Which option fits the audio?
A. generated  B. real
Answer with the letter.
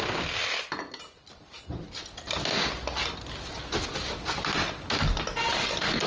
B